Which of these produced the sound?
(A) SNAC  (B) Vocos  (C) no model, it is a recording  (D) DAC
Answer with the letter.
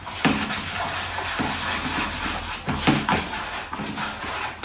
C